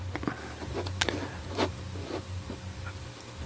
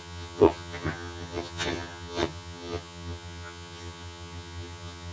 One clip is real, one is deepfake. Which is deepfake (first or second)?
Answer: second